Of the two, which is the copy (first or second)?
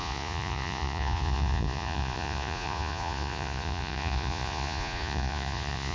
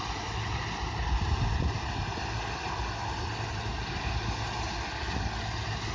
first